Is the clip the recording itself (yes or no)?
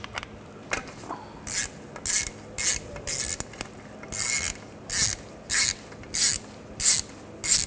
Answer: yes